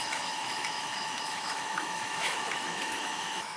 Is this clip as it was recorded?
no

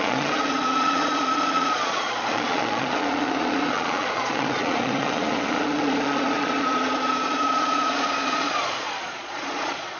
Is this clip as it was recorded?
no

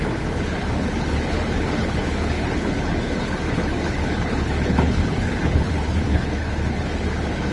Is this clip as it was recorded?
no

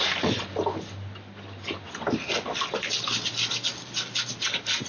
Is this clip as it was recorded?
yes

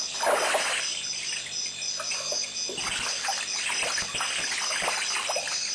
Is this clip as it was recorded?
yes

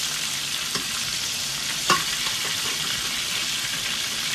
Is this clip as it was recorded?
no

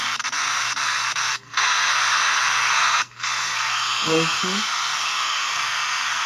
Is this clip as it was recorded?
no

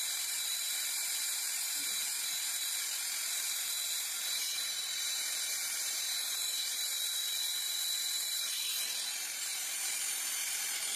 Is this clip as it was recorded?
no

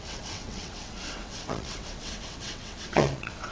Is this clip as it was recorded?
no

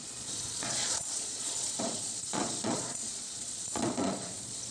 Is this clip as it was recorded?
no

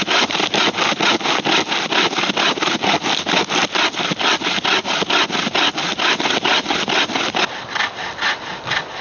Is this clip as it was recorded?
yes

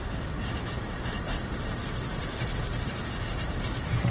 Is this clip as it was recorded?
yes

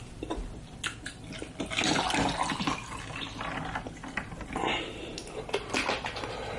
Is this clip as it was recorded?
yes